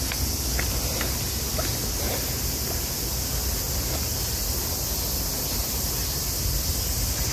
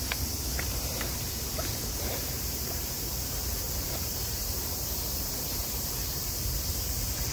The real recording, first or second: first